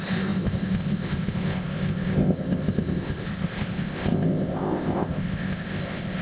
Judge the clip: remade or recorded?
remade